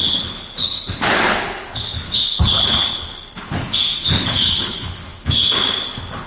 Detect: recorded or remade remade